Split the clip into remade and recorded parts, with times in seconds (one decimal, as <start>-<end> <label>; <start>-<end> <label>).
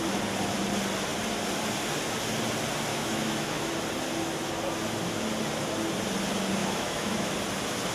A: 0.0-2.9 recorded; 2.9-3.7 remade; 3.7-6.6 recorded; 6.6-7.3 remade; 7.3-7.9 recorded